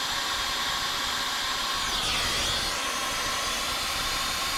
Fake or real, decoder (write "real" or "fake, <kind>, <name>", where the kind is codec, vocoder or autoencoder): real